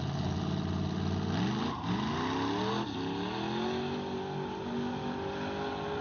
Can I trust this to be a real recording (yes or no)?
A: yes